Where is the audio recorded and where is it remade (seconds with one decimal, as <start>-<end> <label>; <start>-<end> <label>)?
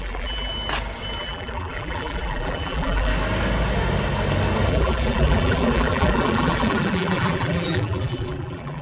0.0-0.5 remade; 0.5-1.2 recorded; 1.2-3.1 remade; 3.1-4.7 recorded; 4.7-8.8 remade